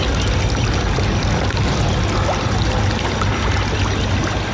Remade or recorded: recorded